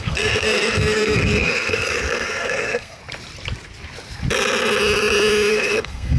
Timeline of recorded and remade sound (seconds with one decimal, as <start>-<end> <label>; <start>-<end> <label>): 0.0-3.0 remade; 3.0-5.5 recorded; 5.5-6.2 remade